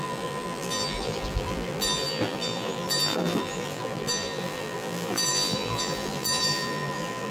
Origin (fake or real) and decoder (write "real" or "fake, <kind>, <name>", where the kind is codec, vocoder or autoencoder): fake, vocoder, BigVGAN v2